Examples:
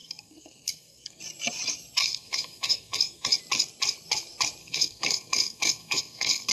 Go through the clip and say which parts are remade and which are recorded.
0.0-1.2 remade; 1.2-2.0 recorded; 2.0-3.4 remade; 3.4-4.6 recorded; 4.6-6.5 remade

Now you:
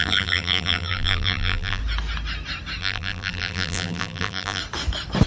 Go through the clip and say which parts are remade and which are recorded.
0.0-1.8 remade; 1.8-2.8 recorded; 2.8-4.6 remade; 4.6-5.3 recorded

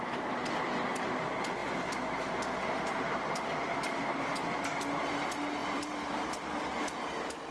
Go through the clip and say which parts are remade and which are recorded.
0.0-1.6 recorded; 1.6-4.4 remade; 4.4-5.6 recorded; 5.6-6.4 remade; 6.4-7.5 recorded

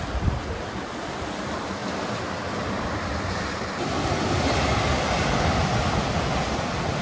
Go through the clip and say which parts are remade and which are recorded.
0.0-7.0 recorded

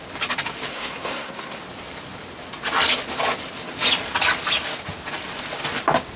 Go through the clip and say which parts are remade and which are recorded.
0.0-0.7 recorded; 0.7-1.6 remade; 1.6-6.2 recorded

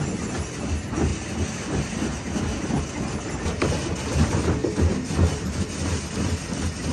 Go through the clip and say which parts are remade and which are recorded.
0.0-6.9 recorded